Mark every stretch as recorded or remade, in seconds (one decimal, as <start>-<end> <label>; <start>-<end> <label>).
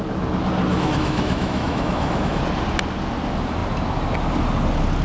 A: 0.0-0.7 recorded; 0.7-2.4 remade; 2.4-5.0 recorded